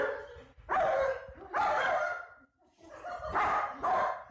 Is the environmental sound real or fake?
real